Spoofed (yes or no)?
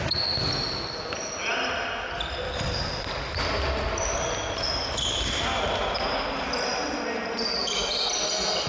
no